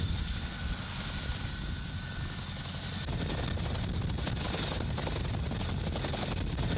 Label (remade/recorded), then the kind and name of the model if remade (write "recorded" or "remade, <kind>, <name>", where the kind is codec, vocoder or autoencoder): recorded